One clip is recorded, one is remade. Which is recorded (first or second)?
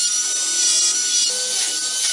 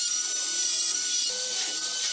first